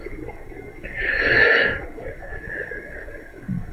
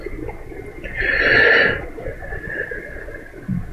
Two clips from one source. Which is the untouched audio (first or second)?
second